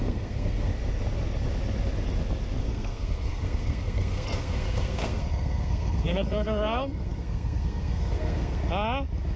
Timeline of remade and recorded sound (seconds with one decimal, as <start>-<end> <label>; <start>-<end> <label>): 0.0-0.7 remade; 0.7-2.6 recorded; 2.6-8.6 remade; 8.6-9.4 recorded